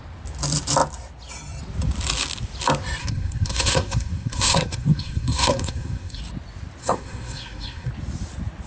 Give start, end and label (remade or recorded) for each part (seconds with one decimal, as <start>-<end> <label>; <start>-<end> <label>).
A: 0.0-3.0 recorded; 3.0-6.2 remade; 6.2-6.8 recorded; 6.8-7.9 remade; 7.9-8.7 recorded